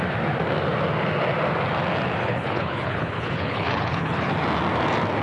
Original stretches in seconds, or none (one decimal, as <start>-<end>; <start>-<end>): 0.0-2.2; 4.3-5.2